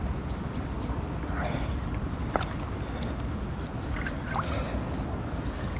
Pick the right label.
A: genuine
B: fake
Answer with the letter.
A